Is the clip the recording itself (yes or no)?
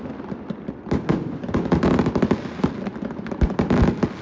yes